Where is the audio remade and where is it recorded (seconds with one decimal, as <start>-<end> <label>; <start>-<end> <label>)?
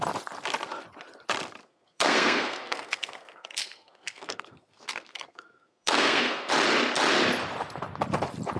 0.0-1.6 recorded; 1.6-6.5 remade; 6.5-8.6 recorded